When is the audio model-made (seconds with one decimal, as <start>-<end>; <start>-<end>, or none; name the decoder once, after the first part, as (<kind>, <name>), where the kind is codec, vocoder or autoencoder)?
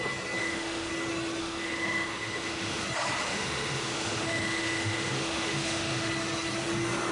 0.4-0.9 (autoencoder, DAC-VAE); 1.4-2.8; 3.2-6.1